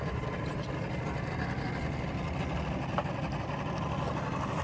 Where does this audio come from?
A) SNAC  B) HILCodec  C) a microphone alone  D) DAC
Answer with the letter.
C